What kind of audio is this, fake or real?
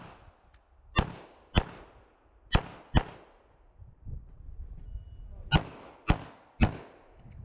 real